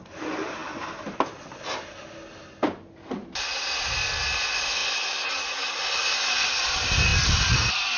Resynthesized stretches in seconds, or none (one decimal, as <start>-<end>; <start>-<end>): none